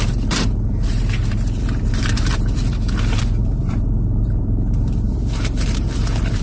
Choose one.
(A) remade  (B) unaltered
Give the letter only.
A